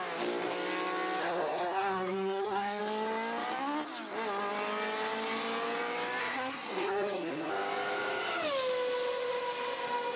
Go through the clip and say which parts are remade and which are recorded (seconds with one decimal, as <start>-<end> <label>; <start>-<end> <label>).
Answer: 0.0-1.2 recorded; 1.2-2.8 remade; 2.8-6.2 recorded; 6.2-7.5 remade; 7.5-10.2 recorded